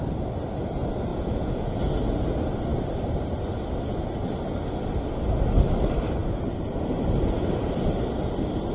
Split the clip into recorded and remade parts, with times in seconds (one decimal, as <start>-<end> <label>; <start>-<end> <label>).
0.0-1.1 recorded; 1.1-1.8 remade; 1.8-8.7 recorded